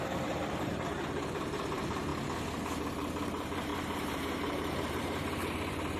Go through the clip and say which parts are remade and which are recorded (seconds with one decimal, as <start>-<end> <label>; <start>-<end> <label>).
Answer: 0.0-2.1 remade; 2.1-2.8 recorded; 2.8-6.0 remade